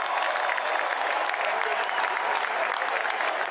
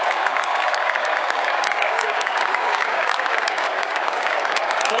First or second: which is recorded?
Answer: first